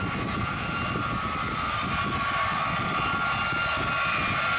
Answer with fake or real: real